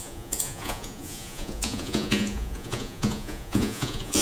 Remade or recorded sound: remade